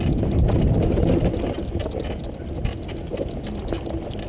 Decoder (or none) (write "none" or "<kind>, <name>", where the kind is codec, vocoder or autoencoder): none